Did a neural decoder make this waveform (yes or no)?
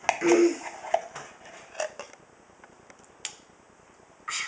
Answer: no